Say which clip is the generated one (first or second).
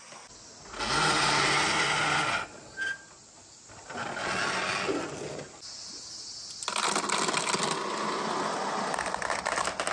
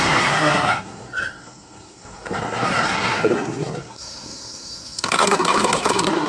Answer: second